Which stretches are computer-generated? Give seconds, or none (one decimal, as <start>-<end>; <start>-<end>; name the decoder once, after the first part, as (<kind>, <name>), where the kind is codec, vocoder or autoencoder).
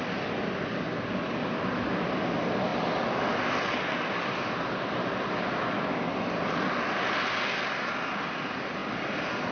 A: none